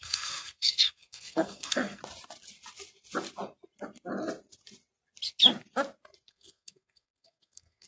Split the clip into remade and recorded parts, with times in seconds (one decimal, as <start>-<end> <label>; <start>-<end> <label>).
0.0-2.0 remade; 2.0-6.3 recorded; 6.3-7.9 remade